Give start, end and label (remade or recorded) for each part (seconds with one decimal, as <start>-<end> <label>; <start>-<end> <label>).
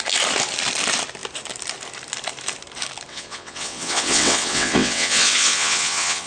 0.0-3.1 recorded; 3.1-6.3 remade